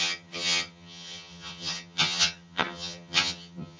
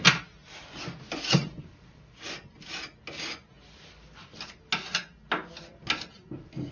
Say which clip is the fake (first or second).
first